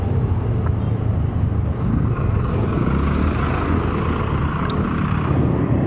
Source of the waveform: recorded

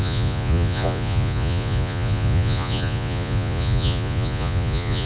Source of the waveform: remade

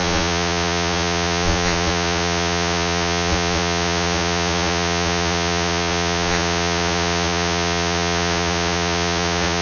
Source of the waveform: remade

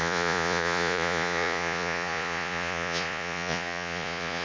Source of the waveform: remade